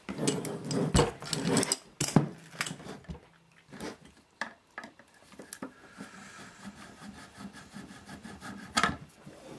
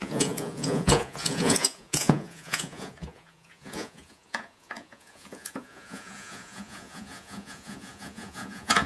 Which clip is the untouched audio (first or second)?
first